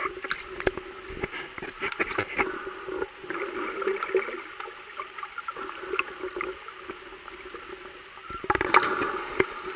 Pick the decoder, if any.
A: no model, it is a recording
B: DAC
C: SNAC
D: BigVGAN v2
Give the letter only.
A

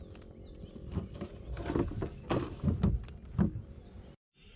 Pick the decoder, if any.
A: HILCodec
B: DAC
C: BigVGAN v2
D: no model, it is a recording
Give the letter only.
D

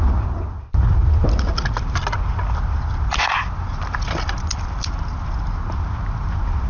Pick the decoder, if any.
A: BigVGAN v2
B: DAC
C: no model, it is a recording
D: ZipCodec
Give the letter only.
C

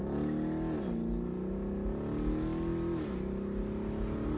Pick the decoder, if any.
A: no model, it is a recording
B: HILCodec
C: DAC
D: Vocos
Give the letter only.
A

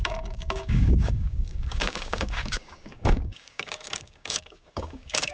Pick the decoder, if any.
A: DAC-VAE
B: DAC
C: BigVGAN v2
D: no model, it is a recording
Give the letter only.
B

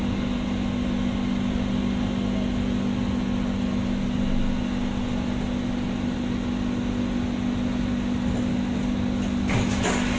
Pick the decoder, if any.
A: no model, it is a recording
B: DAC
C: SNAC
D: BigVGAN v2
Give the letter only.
A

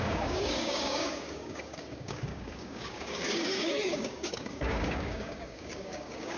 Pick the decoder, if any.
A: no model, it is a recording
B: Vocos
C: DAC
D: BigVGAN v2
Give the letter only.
C